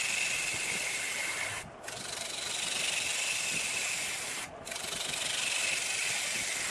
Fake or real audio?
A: real